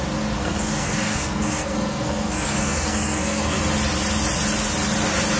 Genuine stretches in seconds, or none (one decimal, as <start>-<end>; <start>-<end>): 0.0-0.4; 3.6-5.4